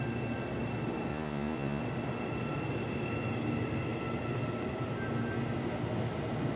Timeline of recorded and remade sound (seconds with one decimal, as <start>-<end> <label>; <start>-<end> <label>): 0.0-1.1 recorded; 1.1-1.8 remade; 1.8-6.6 recorded